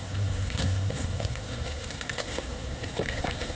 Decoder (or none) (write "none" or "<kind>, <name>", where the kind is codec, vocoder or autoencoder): codec, SNAC